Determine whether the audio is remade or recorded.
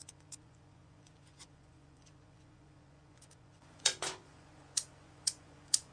remade